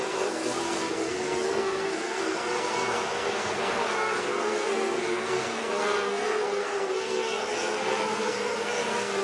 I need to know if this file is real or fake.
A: fake